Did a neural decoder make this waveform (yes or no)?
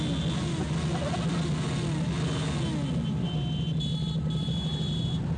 no